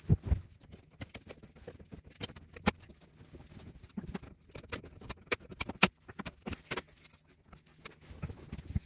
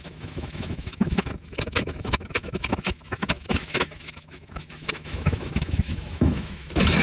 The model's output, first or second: second